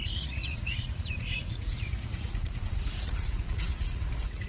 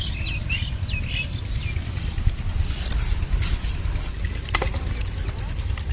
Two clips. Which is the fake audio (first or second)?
first